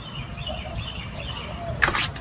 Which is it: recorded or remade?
recorded